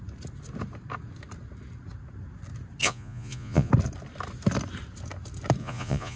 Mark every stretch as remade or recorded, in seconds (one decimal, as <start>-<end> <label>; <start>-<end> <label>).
0.0-2.8 recorded; 2.8-3.7 remade; 3.7-5.6 recorded; 5.6-6.2 remade